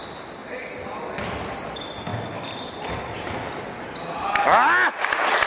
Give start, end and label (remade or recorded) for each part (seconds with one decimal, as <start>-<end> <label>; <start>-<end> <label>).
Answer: 0.0-2.1 recorded; 2.1-3.0 remade; 3.0-5.5 recorded